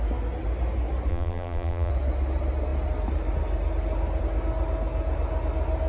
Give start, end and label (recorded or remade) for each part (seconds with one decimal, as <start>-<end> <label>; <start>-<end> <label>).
0.0-1.1 recorded; 1.1-1.9 remade; 1.9-5.9 recorded